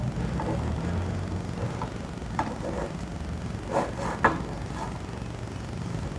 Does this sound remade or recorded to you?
recorded